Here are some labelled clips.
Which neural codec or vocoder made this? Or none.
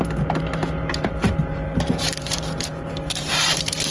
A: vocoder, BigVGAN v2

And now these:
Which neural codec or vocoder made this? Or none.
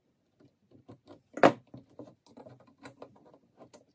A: none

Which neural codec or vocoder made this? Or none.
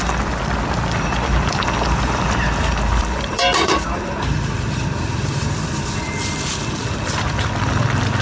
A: vocoder, BigVGAN v2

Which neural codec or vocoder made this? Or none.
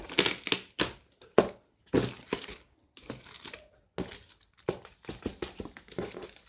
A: none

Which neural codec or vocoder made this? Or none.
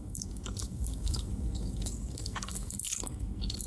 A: codec, SNAC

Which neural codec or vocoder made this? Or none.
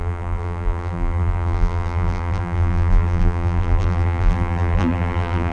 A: vocoder, BigVGAN v2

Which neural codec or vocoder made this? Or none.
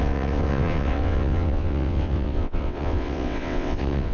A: vocoder, WaveNeXt